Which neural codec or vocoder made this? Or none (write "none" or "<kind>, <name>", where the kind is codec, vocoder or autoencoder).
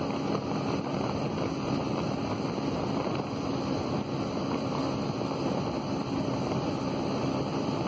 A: none